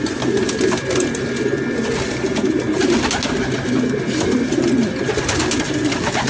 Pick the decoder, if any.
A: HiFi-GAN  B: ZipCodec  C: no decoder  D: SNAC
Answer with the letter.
C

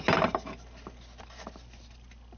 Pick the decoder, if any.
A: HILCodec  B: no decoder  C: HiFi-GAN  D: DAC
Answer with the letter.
B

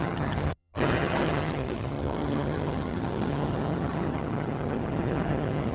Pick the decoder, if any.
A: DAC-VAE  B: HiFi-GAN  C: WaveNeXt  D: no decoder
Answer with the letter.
B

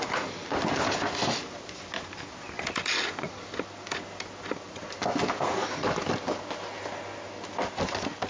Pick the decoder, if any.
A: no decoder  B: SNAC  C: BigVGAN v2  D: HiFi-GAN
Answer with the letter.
A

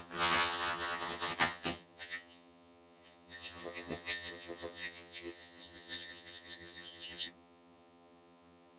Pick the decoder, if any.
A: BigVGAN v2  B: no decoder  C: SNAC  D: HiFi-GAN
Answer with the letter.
D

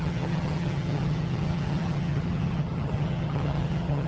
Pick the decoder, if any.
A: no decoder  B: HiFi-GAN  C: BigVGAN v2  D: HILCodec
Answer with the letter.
B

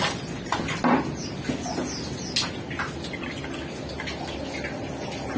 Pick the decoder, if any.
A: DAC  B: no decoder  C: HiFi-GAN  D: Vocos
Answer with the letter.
B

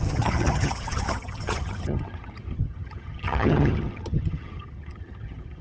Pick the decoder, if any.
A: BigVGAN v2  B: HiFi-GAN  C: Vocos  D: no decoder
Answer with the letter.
B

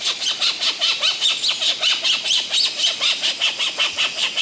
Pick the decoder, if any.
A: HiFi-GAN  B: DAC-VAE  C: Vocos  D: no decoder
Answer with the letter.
D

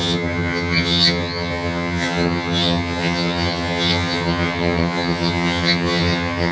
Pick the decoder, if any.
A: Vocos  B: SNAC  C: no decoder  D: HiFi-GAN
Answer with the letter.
D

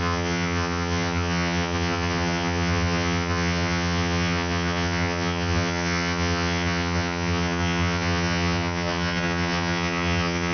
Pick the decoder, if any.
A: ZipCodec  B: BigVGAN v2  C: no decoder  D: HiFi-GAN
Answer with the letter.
D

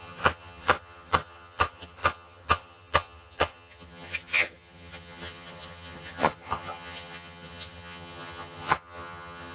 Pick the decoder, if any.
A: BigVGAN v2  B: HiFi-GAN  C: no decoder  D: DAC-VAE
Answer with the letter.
B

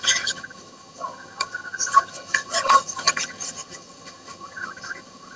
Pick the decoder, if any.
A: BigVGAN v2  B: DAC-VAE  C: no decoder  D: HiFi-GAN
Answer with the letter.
D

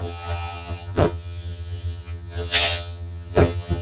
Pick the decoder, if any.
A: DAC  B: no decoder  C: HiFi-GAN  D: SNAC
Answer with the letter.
C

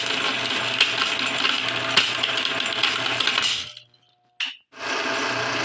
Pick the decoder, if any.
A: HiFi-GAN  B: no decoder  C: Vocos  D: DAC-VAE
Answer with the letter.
B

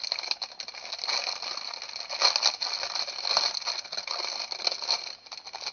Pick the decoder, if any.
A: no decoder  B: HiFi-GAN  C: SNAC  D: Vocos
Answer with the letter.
A